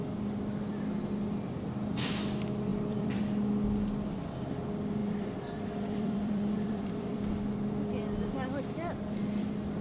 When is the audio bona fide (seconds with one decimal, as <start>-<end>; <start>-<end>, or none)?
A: 0.0-2.7; 3.2-5.0; 7.2-9.8